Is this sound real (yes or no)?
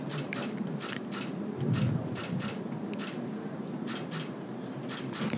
yes